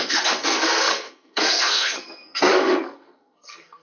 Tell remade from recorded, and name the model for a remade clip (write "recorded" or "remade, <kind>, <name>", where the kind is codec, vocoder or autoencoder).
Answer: remade, codec, SNAC